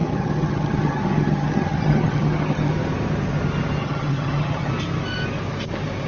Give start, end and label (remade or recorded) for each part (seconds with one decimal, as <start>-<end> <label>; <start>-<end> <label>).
0.0-2.7 remade; 2.7-3.8 recorded; 3.8-4.7 remade; 4.7-6.1 recorded

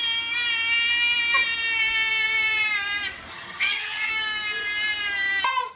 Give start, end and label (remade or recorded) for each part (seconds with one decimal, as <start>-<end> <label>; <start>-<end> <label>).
0.0-3.3 recorded; 3.3-4.1 remade; 4.1-5.8 recorded

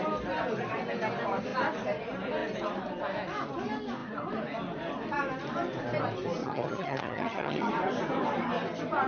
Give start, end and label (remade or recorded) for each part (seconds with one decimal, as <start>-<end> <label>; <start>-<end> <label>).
0.0-6.4 recorded; 6.4-7.7 remade; 7.7-9.1 recorded

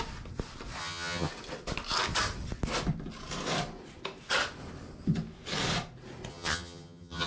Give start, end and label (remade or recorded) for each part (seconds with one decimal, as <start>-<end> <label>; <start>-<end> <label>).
0.0-0.8 recorded; 0.8-1.3 remade; 1.3-6.3 recorded; 6.3-7.3 remade

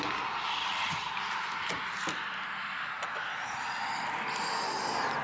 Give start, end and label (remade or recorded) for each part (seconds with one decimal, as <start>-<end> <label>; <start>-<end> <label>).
0.0-0.5 recorded; 0.5-1.1 remade; 1.1-5.2 recorded